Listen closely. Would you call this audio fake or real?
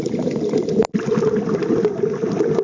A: real